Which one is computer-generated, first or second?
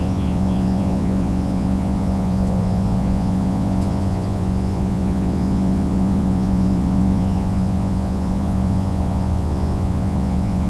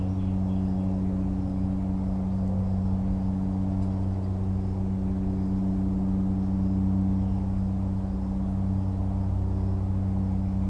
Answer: first